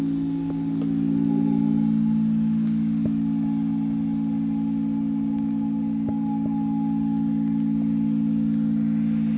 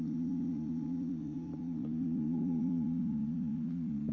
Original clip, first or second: first